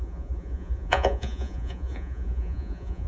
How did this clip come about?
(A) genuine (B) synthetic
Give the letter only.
B